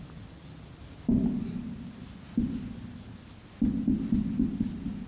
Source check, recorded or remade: recorded